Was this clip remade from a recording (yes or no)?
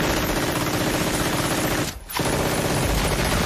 no